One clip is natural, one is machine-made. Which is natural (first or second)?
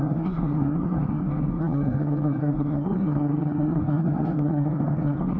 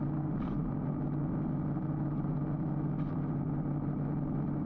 second